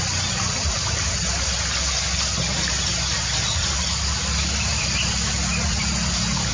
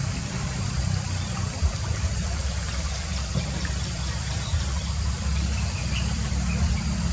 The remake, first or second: second